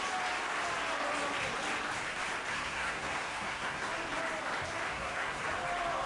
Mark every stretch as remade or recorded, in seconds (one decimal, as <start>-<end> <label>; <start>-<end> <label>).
0.0-2.5 recorded; 2.5-3.9 remade; 3.9-4.9 recorded; 4.9-5.4 remade; 5.4-6.1 recorded